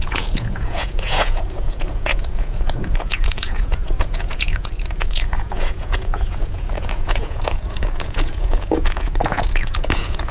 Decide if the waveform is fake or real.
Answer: fake